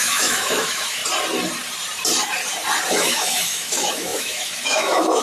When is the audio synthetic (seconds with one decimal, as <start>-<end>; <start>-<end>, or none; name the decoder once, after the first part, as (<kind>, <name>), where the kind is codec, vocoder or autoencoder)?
0.0-1.0 (autoencoder, DAC-VAE); 2.9-5.2